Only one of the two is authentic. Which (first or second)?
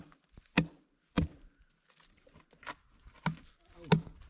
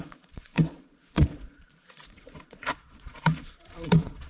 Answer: first